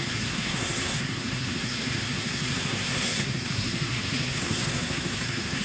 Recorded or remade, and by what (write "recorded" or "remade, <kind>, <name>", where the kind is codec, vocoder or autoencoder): remade, codec, SNAC